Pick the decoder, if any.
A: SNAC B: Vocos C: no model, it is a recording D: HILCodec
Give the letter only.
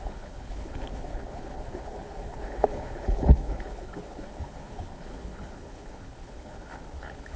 D